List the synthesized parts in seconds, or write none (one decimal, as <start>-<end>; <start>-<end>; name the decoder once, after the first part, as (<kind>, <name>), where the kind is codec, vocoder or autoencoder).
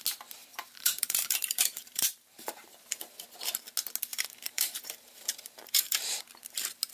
0.4-2.8 (vocoder, BigVGAN v2); 4.1-6.2